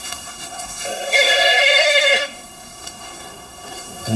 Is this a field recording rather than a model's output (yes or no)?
no